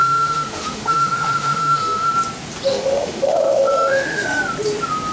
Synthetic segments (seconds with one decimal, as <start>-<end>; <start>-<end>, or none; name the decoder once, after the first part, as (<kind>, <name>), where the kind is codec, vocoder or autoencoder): 0.0-2.1 (autoencoder, DAC-VAE); 2.7-4.4